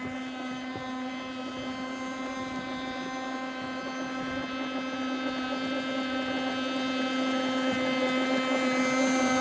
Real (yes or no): yes